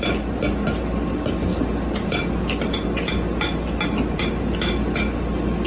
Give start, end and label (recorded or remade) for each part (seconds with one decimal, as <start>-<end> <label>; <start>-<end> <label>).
0.0-5.7 recorded